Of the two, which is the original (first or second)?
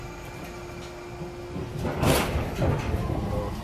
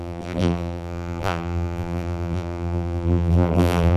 first